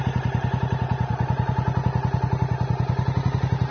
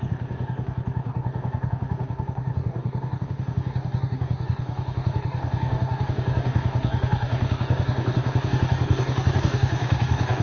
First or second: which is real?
first